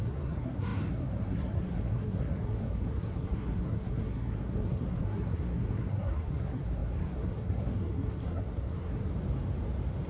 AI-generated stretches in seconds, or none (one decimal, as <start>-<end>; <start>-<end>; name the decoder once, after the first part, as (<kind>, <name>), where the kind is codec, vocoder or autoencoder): 0.0-9.1 (codec, SNAC)